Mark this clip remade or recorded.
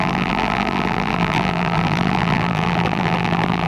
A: remade